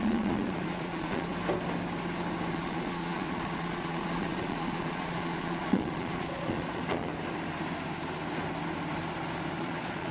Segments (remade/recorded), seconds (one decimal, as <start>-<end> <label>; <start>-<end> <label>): 0.0-1.3 remade; 1.3-2.5 recorded; 2.5-7.1 remade; 7.1-9.6 recorded; 9.6-10.1 remade